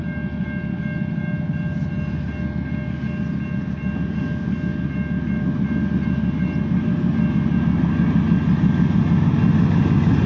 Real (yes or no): yes